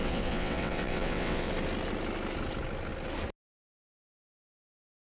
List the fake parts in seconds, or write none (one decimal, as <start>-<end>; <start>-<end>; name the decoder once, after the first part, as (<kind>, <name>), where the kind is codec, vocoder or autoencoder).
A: 0.0-1.5 (vocoder, WaveNeXt)